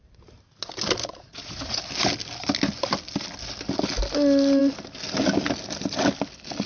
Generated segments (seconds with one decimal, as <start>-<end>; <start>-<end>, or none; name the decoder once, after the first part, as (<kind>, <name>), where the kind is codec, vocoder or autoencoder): 1.0-1.8 (vocoder, Vocos)